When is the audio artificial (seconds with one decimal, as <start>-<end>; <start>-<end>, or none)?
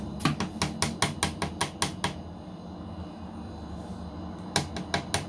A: none